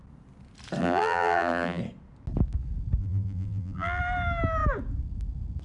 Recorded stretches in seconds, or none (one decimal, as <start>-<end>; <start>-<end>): 0.0-0.8; 1.8-3.0; 4.0-5.6